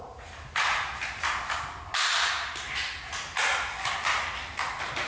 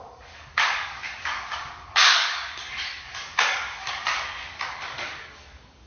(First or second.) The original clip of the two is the first